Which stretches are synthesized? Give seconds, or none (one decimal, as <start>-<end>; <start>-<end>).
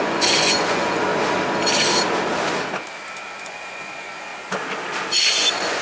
0.0-1.1; 3.4-4.3; 5.3-5.8